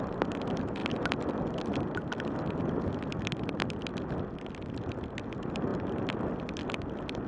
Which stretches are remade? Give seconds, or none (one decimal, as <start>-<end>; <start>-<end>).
none